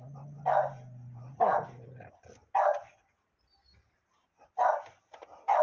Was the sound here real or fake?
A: real